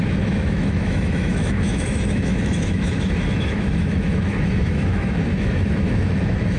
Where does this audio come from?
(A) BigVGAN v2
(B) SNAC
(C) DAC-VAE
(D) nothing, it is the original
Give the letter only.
C